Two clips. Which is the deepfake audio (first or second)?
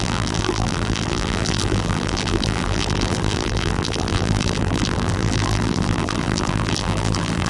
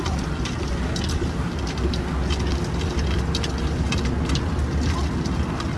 first